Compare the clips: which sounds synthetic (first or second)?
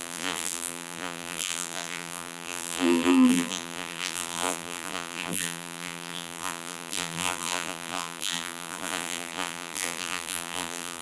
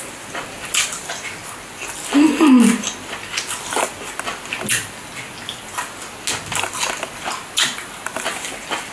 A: first